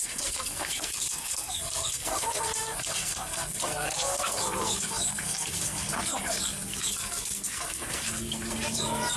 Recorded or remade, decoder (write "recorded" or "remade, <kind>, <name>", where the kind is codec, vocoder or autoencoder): remade, codec, SNAC